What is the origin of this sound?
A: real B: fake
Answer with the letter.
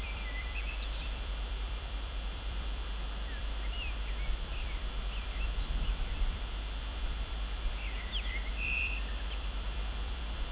B